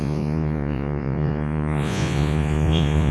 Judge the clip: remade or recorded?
remade